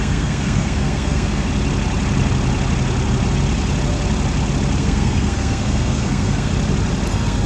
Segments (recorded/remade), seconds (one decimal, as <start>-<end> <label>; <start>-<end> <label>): 0.0-1.5 remade; 1.5-4.8 recorded; 4.8-6.5 remade; 6.5-7.1 recorded; 7.1-7.5 remade